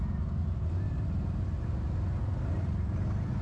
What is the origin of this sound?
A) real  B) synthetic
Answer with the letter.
A